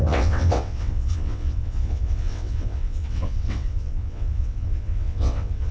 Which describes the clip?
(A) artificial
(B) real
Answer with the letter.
A